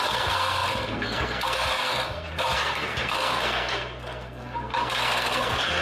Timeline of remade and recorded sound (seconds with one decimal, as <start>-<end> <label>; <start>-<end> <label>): 0.0-5.8 remade